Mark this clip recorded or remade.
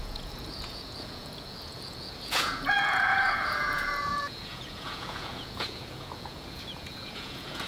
remade